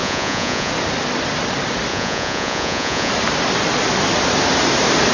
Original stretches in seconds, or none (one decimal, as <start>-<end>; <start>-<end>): 0.7-1.9; 3.1-5.1

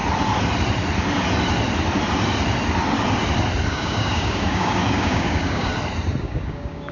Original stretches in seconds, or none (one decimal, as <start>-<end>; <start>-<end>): 0.0-3.7; 5.7-6.2

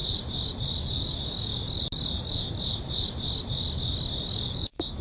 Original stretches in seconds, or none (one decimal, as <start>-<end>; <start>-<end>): 0.0-0.8; 1.5-4.5

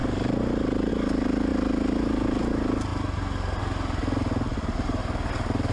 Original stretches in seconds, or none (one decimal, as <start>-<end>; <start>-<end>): 0.0-5.7

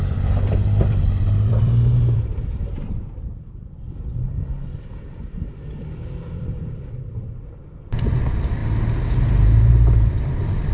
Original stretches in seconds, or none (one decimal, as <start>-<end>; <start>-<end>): 8.6-9.7

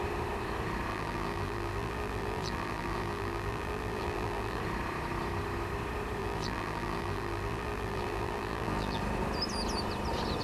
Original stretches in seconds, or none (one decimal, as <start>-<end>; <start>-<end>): 0.0-0.9; 4.6-6.2; 9.0-10.4